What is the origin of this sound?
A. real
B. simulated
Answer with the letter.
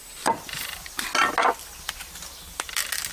A